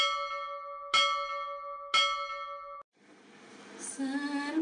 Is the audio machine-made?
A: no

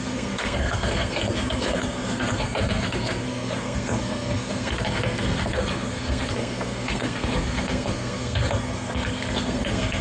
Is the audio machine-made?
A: yes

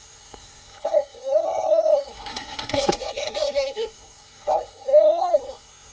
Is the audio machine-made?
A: yes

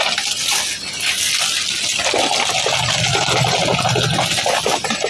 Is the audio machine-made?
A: no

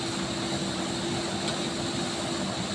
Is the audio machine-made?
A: no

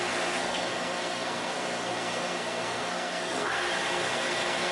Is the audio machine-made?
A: yes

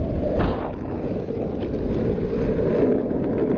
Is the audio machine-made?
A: no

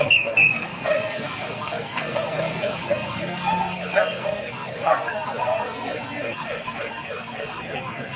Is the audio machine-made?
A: yes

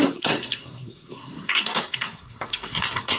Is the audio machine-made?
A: yes